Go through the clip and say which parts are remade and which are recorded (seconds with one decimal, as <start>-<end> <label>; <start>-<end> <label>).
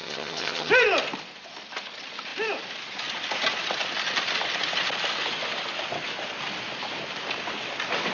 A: 0.0-0.7 remade; 0.7-8.1 recorded